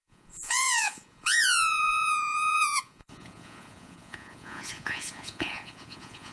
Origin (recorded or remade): remade